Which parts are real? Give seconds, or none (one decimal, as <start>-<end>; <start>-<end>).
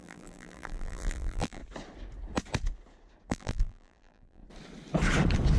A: 1.6-3.3; 4.4-5.6